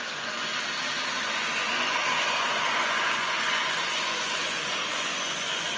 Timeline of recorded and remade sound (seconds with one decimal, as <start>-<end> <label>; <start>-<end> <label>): 0.0-0.5 remade; 0.5-1.1 recorded; 1.1-5.8 remade